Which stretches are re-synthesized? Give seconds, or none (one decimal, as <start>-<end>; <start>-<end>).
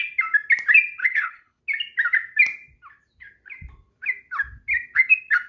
1.0-1.6